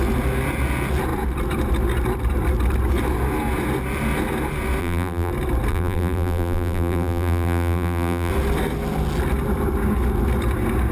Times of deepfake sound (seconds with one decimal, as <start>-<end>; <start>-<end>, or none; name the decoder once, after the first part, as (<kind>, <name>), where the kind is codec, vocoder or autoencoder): 4.8-5.3 (vocoder, BigVGAN v2); 5.7-8.3